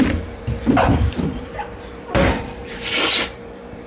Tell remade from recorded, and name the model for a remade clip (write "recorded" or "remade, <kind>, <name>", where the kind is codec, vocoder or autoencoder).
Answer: remade, vocoder, BigVGAN v2